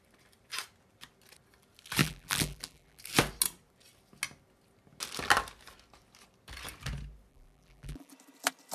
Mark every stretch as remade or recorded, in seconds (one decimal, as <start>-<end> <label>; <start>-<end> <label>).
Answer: 0.0-2.0 recorded; 2.0-3.0 remade; 3.0-7.3 recorded; 7.3-8.1 remade; 8.1-8.7 recorded